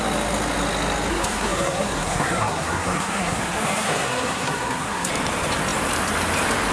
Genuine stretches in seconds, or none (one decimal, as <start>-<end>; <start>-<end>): 0.0-1.1; 5.1-6.7

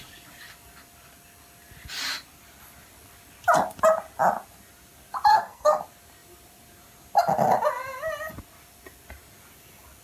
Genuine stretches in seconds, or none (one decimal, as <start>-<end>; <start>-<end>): 0.0-5.3; 5.8-10.0

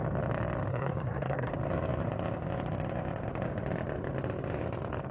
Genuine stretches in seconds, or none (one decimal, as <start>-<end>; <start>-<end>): 0.0-0.7; 1.5-5.1

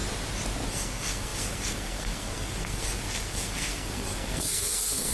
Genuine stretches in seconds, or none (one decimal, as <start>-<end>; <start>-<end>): 0.0-0.7